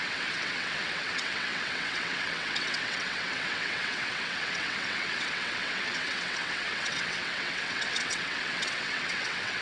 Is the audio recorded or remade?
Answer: remade